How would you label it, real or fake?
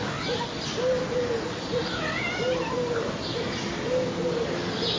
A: real